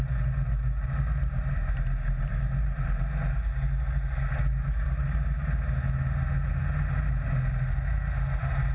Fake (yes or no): no